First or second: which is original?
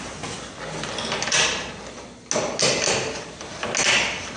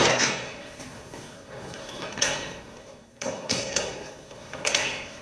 first